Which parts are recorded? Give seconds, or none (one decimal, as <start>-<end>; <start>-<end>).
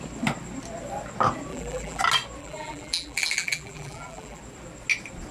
0.0-1.5; 2.0-2.4; 4.4-5.3